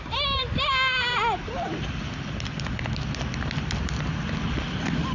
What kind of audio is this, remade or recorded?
recorded